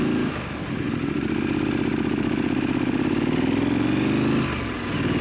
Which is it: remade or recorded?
recorded